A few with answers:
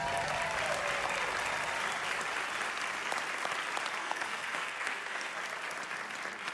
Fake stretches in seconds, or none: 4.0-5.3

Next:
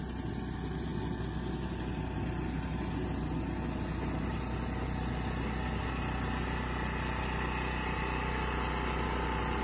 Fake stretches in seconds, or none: none